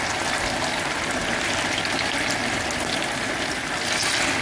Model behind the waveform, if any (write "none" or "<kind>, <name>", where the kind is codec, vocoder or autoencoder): none